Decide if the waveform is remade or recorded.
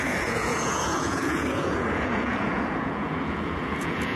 remade